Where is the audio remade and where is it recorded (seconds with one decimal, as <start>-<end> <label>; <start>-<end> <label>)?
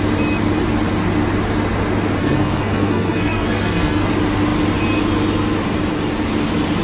0.0-2.2 recorded; 2.2-4.1 remade; 4.1-6.8 recorded